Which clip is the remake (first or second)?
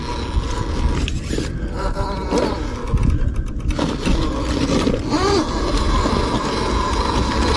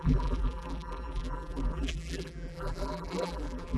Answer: second